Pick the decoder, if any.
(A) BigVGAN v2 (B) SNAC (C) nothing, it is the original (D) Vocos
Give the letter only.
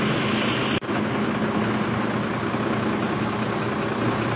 C